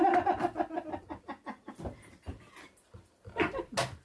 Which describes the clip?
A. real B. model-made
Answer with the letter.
A